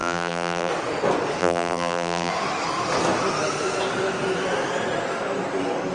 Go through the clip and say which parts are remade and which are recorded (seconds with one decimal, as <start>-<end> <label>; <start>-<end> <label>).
0.0-0.7 remade; 0.7-1.4 recorded; 1.4-2.3 remade; 2.3-5.9 recorded